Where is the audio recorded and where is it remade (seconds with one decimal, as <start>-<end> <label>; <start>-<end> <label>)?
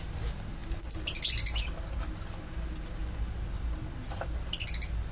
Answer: 0.0-5.1 recorded